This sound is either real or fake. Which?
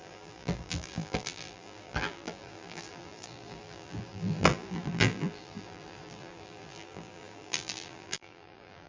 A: fake